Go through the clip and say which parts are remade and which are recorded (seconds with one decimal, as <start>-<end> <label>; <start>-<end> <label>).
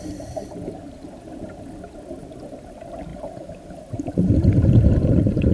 0.0-5.5 remade